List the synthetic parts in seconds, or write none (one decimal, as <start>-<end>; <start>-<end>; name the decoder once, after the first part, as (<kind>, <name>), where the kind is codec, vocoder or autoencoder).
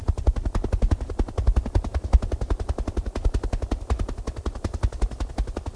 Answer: none